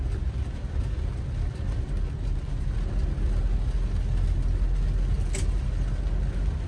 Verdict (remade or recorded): recorded